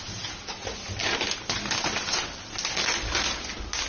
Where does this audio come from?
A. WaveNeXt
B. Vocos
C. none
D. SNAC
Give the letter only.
C